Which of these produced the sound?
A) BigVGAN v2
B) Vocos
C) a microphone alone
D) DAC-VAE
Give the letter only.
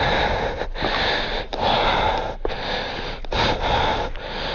C